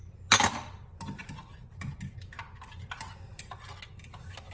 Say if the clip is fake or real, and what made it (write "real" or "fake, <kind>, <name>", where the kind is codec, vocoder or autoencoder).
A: real